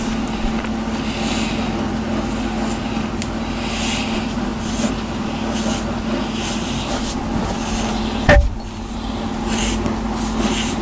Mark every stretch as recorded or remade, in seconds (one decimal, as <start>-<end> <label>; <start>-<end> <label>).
0.0-10.8 recorded